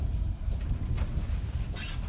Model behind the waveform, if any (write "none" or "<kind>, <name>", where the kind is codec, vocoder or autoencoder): none